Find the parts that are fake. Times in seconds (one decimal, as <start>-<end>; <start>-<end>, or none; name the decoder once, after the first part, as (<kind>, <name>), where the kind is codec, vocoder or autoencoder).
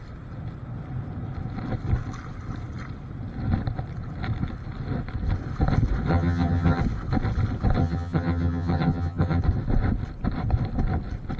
6.1-6.8 (vocoder, HiFi-GAN); 7.8-9.4